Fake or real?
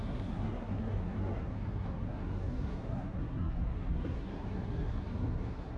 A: fake